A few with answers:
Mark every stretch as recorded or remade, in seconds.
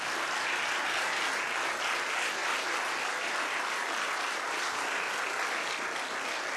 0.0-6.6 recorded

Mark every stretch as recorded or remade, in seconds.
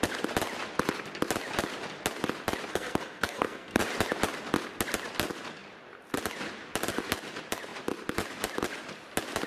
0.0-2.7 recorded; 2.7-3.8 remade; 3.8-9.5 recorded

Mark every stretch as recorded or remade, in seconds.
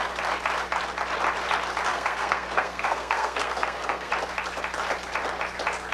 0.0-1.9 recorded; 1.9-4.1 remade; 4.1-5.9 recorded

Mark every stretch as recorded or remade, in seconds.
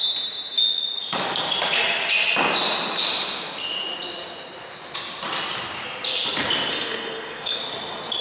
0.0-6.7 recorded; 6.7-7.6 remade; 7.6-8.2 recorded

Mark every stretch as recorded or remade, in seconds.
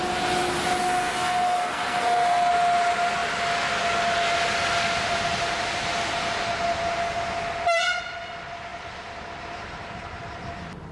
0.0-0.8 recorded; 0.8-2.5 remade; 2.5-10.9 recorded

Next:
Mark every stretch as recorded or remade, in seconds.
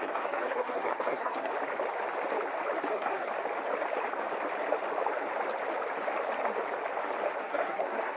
0.0-1.5 remade; 1.5-2.9 recorded; 2.9-3.3 remade; 3.3-7.4 recorded; 7.4-8.2 remade